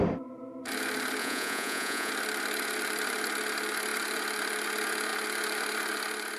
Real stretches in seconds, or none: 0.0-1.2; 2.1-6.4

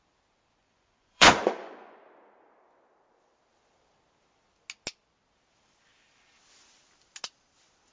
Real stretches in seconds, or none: 0.0-0.6; 2.0-7.9